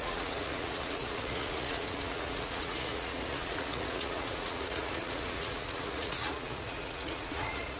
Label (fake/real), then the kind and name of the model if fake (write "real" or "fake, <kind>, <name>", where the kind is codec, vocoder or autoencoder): fake, vocoder, Vocos